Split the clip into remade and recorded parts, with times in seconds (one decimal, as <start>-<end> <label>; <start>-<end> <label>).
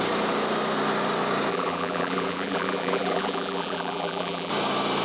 0.0-1.5 recorded; 1.5-4.5 remade; 4.5-5.0 recorded